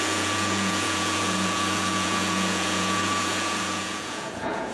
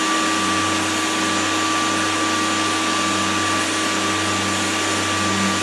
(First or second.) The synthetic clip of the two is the first